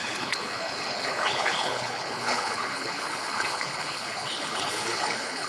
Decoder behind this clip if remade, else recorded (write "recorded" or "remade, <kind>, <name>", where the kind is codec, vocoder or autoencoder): remade, codec, HILCodec